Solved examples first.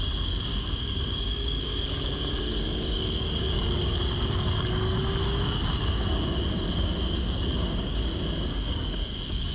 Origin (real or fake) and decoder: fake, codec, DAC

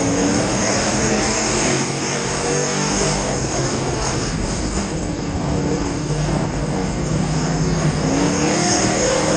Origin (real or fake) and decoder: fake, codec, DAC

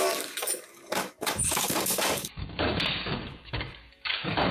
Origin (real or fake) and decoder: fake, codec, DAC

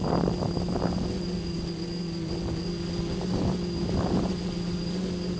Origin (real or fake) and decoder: real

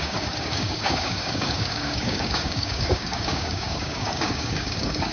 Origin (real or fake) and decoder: fake, codec, DAC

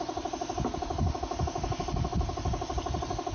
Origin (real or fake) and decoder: real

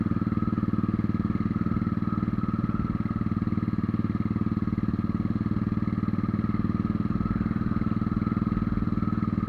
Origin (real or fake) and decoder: real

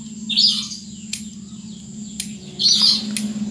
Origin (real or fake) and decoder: real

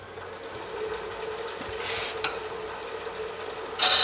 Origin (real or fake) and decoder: real